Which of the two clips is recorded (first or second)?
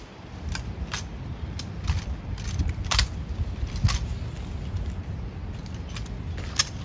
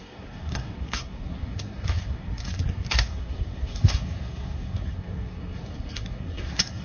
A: first